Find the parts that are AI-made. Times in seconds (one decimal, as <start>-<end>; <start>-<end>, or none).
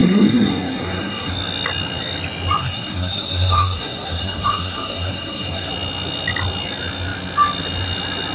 0.0-1.3; 2.6-5.7